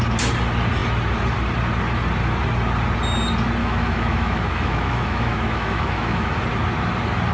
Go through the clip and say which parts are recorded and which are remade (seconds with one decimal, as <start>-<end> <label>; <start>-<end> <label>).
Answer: 0.0-3.6 recorded; 3.6-6.4 remade; 6.4-7.3 recorded